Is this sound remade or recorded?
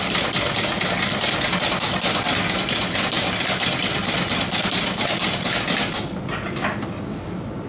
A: recorded